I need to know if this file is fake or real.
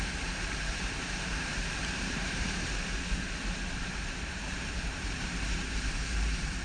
fake